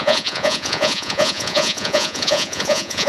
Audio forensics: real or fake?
fake